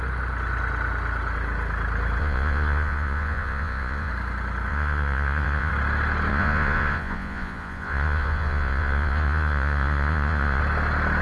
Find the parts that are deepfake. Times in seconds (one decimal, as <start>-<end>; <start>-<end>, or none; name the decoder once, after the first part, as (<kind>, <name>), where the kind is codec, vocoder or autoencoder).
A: 2.2-4.1 (vocoder, Vocos); 4.7-5.7; 6.3-10.6